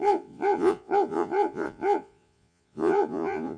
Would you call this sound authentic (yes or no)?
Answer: no